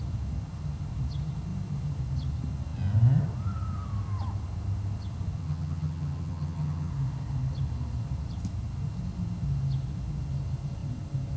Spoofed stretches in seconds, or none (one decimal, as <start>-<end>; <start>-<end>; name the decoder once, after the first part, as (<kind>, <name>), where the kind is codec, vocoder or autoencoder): 5.4-6.9 (vocoder, HiFi-GAN)